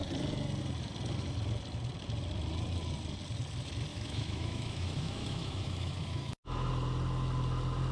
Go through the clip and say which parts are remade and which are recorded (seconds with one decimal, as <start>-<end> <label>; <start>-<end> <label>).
0.0-3.9 recorded; 3.9-6.7 remade; 6.7-7.9 recorded